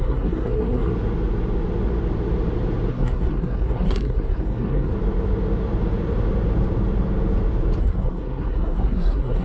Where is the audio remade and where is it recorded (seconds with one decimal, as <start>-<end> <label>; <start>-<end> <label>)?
0.0-0.9 remade; 0.9-2.9 recorded; 2.9-4.9 remade; 4.9-7.8 recorded; 7.8-9.4 remade